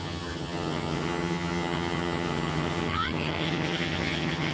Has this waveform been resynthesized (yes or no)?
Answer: yes